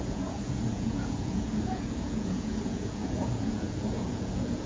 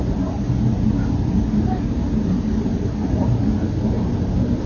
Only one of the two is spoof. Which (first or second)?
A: first